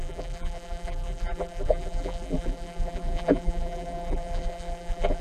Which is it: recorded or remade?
remade